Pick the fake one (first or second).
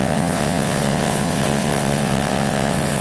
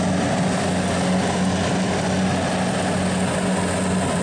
first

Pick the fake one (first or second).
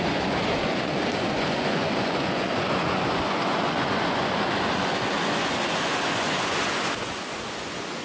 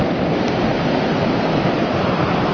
first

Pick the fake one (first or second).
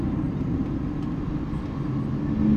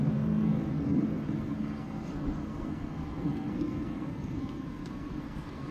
second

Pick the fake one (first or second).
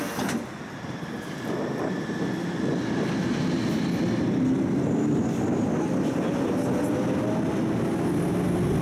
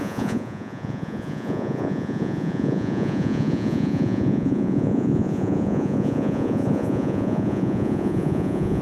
second